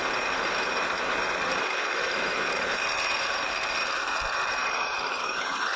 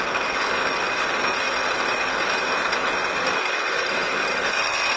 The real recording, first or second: second